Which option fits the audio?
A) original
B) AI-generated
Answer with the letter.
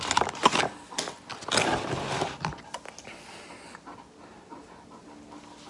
A